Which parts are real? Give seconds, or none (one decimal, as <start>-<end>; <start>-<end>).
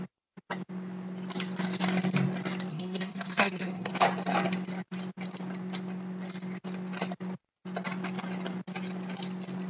0.0-2.7; 3.9-9.7